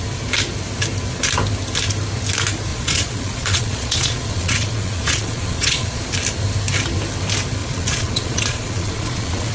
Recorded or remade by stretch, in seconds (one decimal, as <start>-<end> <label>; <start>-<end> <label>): 0.0-2.7 recorded; 2.7-6.0 remade; 6.0-7.6 recorded; 7.6-9.5 remade